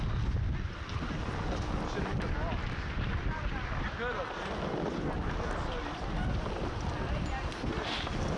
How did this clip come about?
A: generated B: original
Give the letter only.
B